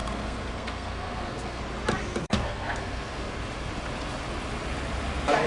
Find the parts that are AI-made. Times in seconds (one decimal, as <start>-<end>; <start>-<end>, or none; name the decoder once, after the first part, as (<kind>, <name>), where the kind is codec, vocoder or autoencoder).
0.0-1.6 (codec, SNAC); 2.2-3.3

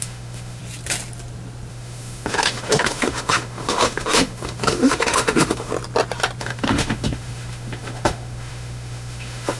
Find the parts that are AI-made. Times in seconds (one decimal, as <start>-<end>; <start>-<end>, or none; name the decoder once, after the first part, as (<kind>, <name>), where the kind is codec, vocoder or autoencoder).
0.0-0.6 (autoencoder, DAC-VAE); 1.7-5.7; 6.4-9.6

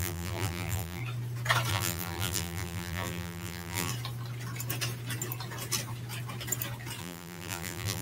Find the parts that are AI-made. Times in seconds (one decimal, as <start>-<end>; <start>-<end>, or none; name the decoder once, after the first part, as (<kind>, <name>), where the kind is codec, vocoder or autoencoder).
0.0-1.0 (vocoder, BigVGAN v2); 1.7-3.9; 7.0-8.0

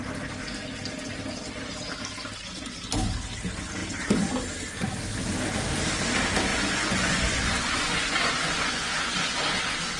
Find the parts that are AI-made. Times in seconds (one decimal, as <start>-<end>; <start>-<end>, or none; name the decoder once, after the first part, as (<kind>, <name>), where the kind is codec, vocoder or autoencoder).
6.5-9.5 (vocoder, Vocos)

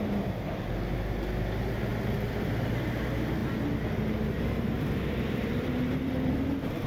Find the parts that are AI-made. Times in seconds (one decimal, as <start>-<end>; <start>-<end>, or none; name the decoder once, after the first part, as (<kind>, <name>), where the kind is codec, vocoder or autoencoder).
1.9-2.7 (vocoder, BigVGAN v2); 3.4-6.3

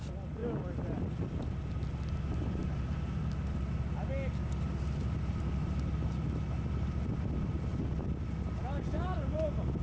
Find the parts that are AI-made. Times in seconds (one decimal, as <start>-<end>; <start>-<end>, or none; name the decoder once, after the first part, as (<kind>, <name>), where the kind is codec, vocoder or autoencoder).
none